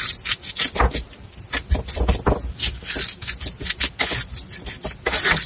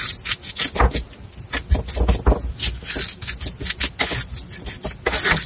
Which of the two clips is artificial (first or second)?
first